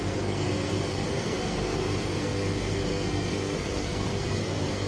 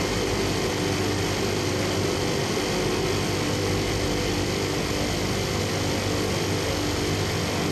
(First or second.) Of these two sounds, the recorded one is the second